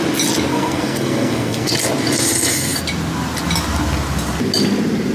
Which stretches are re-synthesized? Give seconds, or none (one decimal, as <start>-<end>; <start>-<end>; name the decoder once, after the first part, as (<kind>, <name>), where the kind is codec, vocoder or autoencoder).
0.5-1.7 (codec, SNAC)